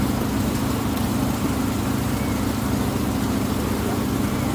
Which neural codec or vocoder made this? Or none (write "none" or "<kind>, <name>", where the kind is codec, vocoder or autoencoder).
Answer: none